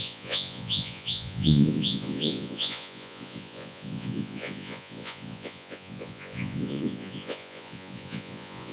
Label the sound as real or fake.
fake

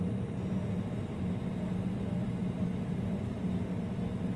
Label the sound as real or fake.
real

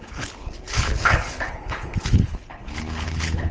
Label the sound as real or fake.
fake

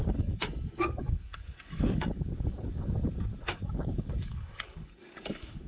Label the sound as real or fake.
fake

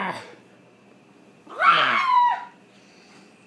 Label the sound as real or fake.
real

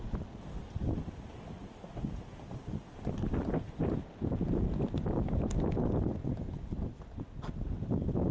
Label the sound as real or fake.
real